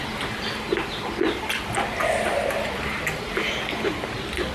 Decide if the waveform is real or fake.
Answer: real